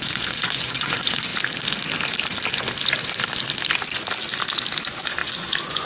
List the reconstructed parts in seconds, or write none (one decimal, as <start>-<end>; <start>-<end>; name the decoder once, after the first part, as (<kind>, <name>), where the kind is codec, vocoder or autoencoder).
0.0-1.3 (vocoder, Vocos); 4.8-5.9